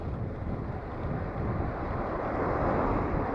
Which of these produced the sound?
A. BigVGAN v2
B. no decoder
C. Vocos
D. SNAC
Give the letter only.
B